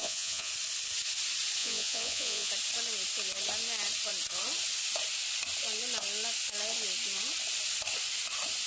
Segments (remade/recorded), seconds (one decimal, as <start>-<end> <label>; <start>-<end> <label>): 0.0-0.5 remade; 0.5-1.6 recorded; 1.6-2.5 remade; 2.5-8.7 recorded